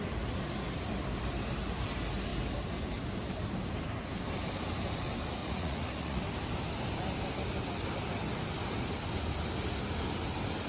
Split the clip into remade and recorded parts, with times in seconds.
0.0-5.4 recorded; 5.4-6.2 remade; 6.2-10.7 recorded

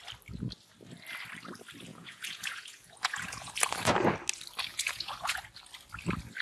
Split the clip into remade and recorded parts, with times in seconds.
0.0-1.9 recorded; 1.9-3.5 remade; 3.5-4.7 recorded; 4.7-5.4 remade; 5.4-6.4 recorded

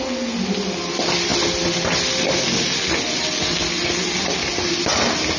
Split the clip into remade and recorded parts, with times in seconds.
0.0-5.4 recorded

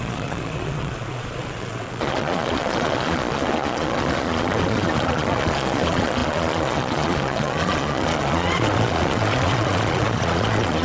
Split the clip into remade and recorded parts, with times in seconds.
0.0-10.8 remade

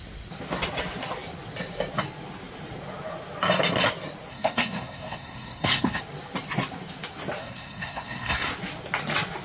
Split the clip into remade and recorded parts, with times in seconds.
0.0-4.3 recorded; 4.3-6.0 remade; 6.0-7.4 recorded; 7.4-8.5 remade; 8.5-9.4 recorded

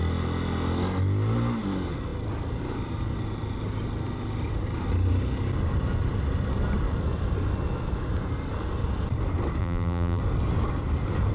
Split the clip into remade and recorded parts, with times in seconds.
0.0-9.6 recorded; 9.6-10.2 remade; 10.2-11.3 recorded

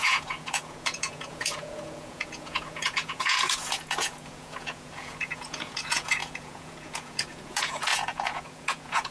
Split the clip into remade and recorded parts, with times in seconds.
0.0-9.1 remade

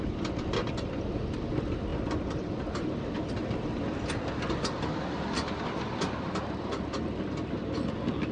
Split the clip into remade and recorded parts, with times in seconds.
0.0-8.3 recorded